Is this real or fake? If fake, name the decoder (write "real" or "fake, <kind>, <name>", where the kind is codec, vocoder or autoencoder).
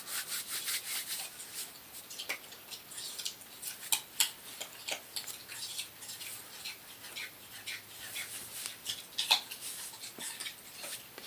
real